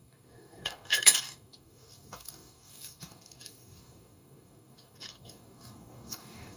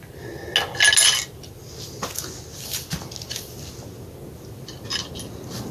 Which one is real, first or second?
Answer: second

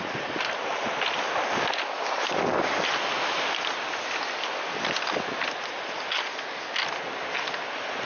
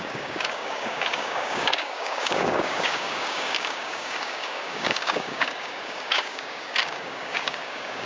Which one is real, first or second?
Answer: first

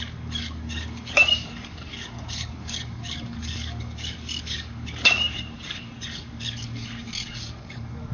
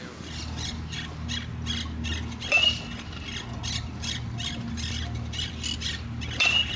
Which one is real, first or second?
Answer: second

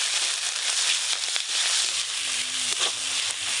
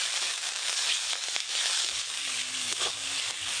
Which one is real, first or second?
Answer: first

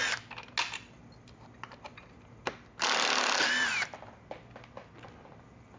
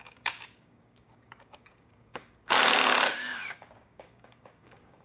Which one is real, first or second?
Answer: first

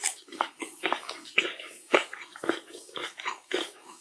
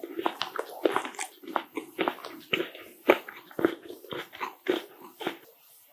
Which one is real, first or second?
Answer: second